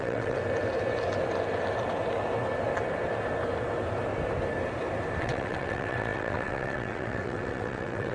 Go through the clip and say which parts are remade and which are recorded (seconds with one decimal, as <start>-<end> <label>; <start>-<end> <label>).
0.0-0.4 remade; 0.4-5.2 recorded; 5.2-8.1 remade